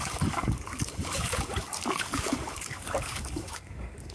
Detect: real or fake fake